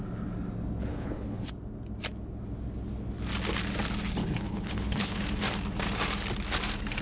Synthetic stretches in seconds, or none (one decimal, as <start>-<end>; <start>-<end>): 0.9-1.5; 4.2-5.2